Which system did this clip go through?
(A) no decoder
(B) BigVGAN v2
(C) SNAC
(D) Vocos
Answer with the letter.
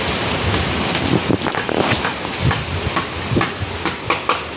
A